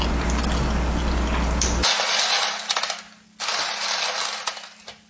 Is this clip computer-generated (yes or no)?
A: no